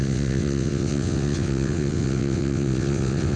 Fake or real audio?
fake